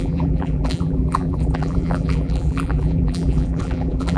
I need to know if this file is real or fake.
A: fake